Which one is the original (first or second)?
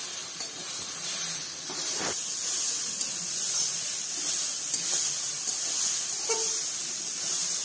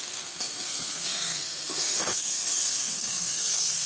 first